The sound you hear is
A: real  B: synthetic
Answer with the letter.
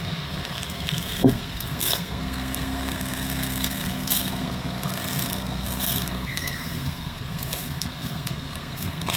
B